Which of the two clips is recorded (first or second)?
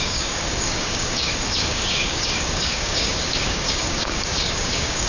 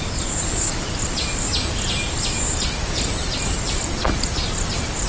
second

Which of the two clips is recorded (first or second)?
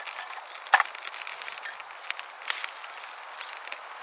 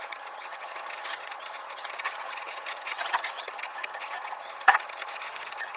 first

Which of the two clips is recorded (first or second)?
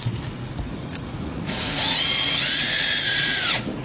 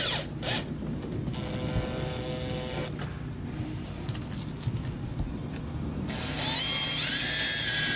second